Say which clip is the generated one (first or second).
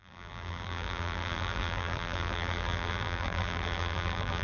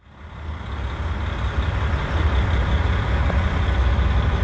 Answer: first